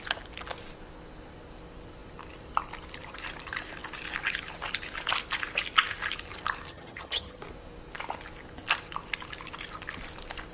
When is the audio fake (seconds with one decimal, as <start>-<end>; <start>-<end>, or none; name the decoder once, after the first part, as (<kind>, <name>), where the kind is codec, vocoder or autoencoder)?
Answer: 6.7-7.4 (vocoder, HiFi-GAN)